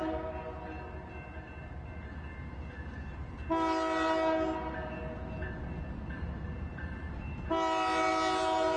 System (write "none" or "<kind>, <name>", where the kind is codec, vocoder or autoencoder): none